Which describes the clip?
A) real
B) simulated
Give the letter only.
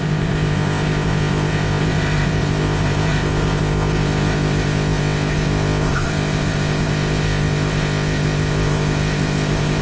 B